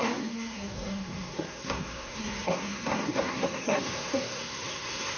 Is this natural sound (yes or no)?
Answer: no